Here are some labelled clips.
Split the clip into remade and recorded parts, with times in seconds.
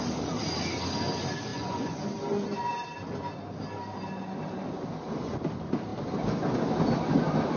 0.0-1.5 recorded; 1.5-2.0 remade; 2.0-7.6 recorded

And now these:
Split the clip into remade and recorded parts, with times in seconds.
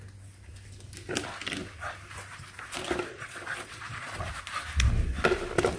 0.0-3.1 recorded; 3.1-4.3 remade; 4.3-5.8 recorded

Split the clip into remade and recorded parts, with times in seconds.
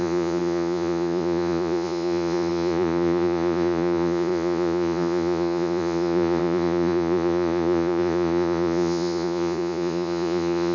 0.0-10.7 remade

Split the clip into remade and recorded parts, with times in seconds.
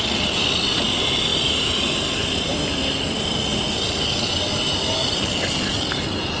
0.0-6.4 recorded